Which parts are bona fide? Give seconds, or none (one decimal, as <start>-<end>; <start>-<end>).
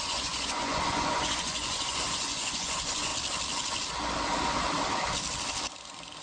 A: 3.1-6.2